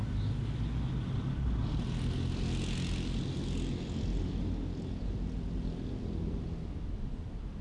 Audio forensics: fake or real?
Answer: real